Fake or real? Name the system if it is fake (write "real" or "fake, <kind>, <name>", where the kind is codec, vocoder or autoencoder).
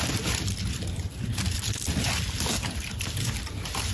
real